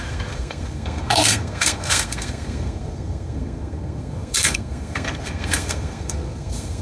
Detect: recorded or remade remade